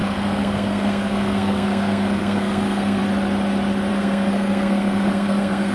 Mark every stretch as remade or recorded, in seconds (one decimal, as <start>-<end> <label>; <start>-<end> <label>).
0.0-3.0 remade; 3.0-3.9 recorded; 3.9-5.7 remade